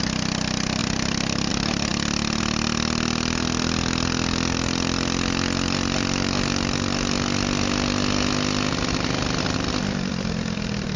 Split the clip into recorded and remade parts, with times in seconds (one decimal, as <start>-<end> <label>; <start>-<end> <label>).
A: 0.0-11.0 recorded